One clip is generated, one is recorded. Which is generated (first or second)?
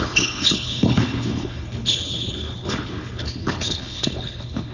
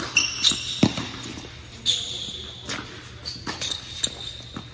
first